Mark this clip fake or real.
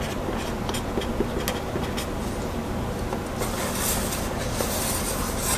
real